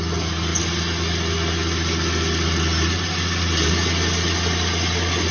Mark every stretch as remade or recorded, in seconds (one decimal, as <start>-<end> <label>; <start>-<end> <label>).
0.0-5.3 recorded